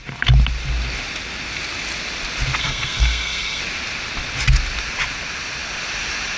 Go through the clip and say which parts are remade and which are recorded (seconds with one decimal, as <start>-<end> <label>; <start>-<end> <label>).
0.0-2.6 recorded; 2.6-3.6 remade; 3.6-6.4 recorded